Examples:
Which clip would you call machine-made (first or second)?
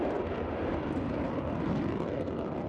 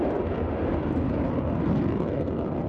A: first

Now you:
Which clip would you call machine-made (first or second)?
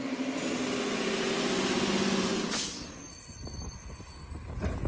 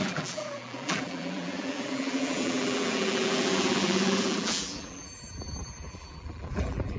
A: second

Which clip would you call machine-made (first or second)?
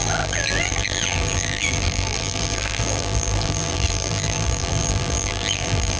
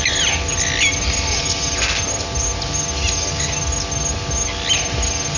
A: first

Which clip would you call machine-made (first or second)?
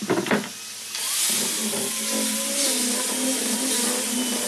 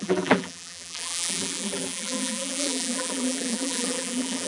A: second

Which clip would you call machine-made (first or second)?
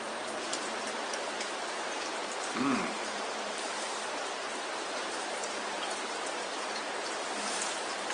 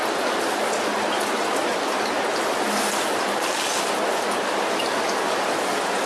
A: first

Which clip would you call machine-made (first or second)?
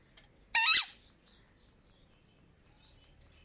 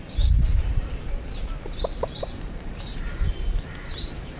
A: second